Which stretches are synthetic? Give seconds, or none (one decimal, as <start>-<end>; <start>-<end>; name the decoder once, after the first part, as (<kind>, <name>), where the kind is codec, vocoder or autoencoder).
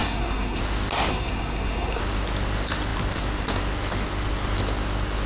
0.0-0.6 (codec, SNAC); 1.1-2.0